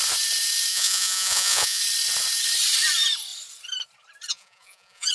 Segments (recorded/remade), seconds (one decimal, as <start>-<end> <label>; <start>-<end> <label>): 0.0-0.7 recorded; 0.7-1.8 remade; 1.8-4.3 recorded; 4.3-5.1 remade